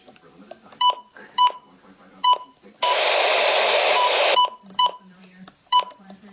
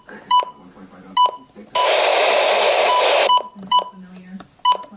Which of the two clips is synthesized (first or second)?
first